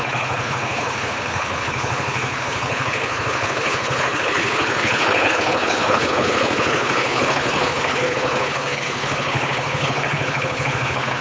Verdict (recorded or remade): remade